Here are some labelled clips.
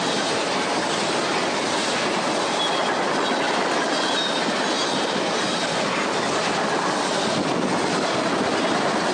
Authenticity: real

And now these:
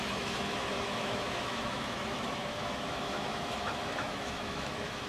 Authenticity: fake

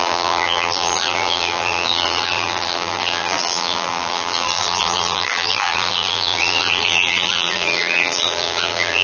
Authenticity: fake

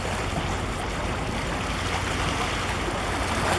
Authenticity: real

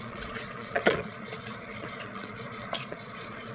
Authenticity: fake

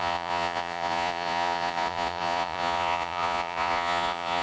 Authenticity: fake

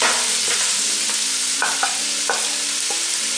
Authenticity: real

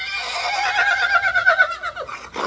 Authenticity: real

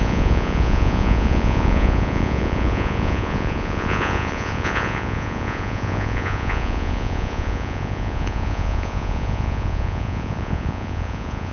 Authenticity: fake